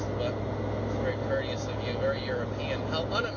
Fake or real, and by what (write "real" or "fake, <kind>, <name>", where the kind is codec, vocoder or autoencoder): real